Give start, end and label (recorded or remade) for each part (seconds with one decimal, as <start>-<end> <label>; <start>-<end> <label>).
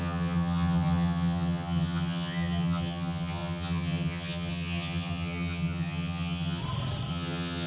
0.0-6.6 remade; 6.6-7.1 recorded; 7.1-7.7 remade